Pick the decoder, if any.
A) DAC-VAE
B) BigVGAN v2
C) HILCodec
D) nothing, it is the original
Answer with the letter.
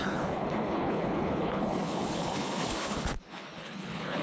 C